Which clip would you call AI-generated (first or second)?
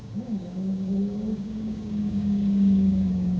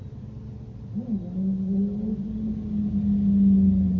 first